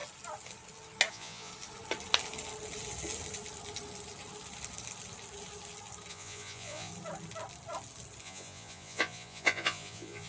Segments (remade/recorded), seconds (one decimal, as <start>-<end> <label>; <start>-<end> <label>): 0.0-1.1 recorded; 1.1-1.5 remade; 1.5-6.1 recorded; 6.1-6.9 remade; 6.9-8.2 recorded; 8.2-10.3 remade